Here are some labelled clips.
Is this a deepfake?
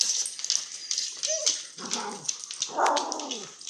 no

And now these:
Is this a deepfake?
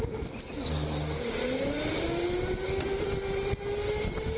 no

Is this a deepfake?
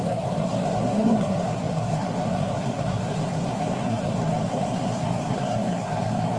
yes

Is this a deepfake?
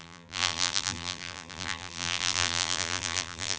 yes